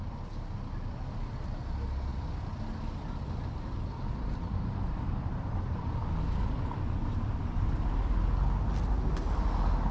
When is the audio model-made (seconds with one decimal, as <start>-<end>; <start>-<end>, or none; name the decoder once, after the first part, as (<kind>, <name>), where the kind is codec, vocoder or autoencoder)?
none